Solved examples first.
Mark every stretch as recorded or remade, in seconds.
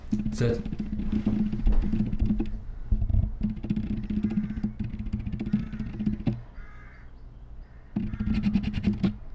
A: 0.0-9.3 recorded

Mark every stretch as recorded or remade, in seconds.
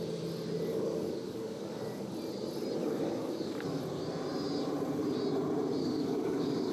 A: 0.0-0.7 recorded; 0.7-2.1 remade; 2.1-2.8 recorded; 2.8-3.8 remade; 3.8-5.8 recorded; 5.8-6.7 remade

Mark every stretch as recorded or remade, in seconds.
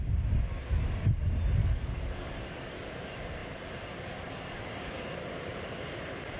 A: 0.0-1.6 recorded; 1.6-2.7 remade; 2.7-6.4 recorded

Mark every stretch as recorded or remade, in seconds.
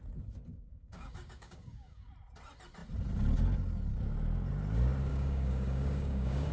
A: 0.0-0.5 recorded; 0.5-2.1 remade; 2.1-5.1 recorded; 5.1-6.5 remade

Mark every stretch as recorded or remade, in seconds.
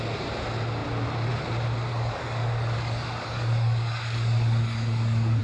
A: 0.0-1.9 recorded; 1.9-5.4 remade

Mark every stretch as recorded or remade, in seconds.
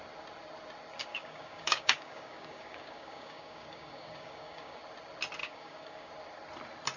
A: 0.0-1.1 recorded; 1.1-4.8 remade; 4.8-5.4 recorded; 5.4-6.1 remade; 6.1-7.0 recorded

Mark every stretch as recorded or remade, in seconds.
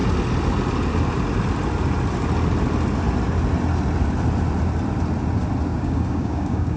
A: 0.0-5.7 recorded; 5.7-6.8 remade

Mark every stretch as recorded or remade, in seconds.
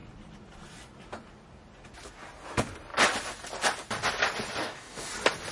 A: 0.0-4.6 recorded; 4.6-5.1 remade; 5.1-5.5 recorded